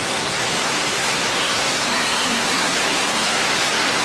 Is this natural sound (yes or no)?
no